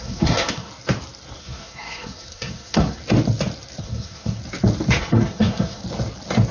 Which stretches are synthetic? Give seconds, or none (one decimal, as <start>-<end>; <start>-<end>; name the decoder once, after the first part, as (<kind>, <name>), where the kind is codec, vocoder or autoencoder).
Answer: 0.0-0.7 (codec, SNAC); 1.4-3.0; 3.8-4.4; 5.0-5.8